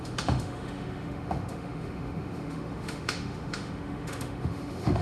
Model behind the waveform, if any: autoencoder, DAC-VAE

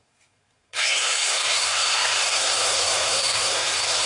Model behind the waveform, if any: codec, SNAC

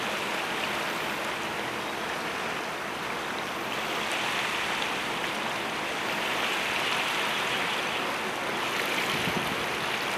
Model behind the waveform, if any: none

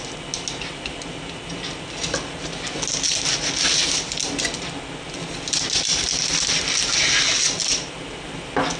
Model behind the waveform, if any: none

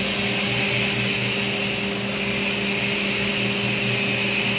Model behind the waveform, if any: none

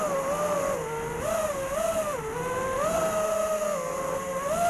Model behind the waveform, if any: none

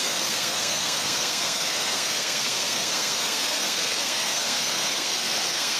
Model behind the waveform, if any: codec, SNAC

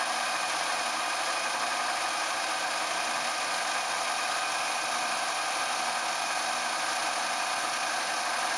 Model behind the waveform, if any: none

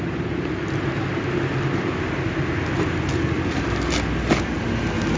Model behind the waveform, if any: none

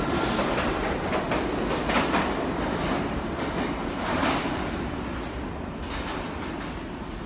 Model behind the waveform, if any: none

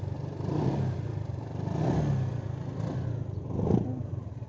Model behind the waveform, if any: none